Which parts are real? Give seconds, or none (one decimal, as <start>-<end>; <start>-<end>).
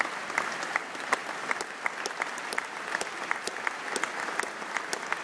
0.0-5.2